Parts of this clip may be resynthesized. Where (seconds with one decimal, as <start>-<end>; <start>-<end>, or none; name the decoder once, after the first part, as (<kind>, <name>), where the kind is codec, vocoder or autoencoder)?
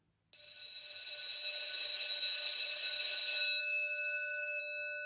3.6-4.6 (codec, DAC)